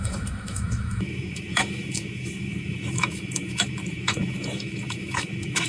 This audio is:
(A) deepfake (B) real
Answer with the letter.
A